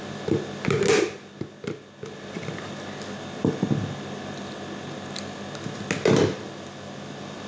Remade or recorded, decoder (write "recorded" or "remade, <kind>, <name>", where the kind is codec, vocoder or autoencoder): recorded